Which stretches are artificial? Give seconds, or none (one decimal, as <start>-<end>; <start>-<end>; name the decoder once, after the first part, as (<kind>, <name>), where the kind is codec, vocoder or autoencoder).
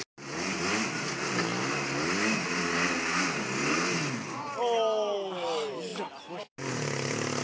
none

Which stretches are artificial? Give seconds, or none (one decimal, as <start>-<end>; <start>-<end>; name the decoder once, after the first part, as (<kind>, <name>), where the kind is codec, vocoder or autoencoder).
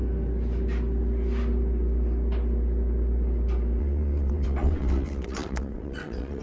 3.8-6.4 (vocoder, WaveNeXt)